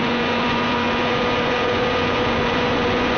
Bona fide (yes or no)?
no